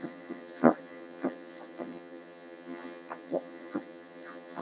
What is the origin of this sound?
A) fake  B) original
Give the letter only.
A